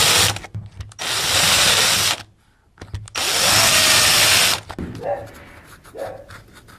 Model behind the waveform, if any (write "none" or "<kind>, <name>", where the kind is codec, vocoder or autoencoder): none